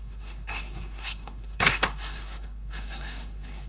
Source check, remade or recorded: remade